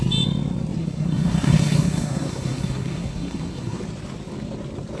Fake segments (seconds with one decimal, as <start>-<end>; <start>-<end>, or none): 0.8-3.8